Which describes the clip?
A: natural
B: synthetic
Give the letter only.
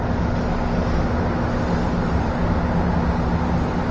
A